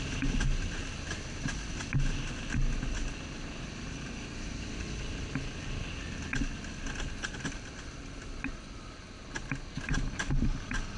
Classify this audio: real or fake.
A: real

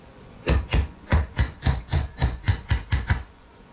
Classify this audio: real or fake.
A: fake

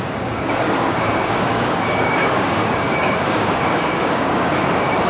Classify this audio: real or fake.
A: fake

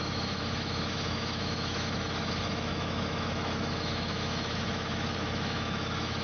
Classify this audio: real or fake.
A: fake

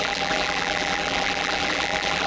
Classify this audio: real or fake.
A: fake